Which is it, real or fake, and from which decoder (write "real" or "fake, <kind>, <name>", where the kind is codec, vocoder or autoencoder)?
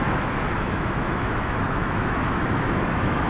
fake, autoencoder, DAC-VAE